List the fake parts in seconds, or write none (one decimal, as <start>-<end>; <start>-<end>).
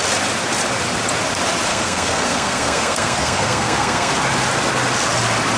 1.7-4.1